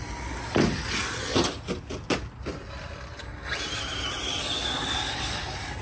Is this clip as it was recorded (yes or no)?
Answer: yes